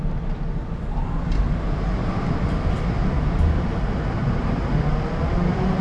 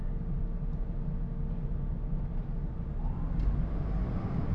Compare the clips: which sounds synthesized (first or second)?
first